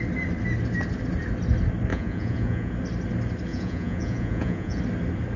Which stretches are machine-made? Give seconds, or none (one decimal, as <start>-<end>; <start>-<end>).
1.9-2.7; 3.5-4.8